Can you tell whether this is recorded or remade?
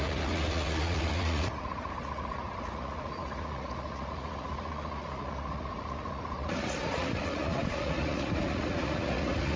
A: remade